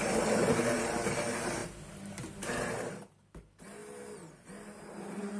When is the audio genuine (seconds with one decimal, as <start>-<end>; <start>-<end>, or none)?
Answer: 3.8-4.9